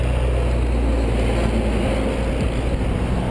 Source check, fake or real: real